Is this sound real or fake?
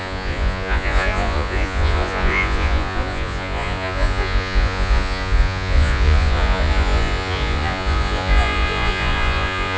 fake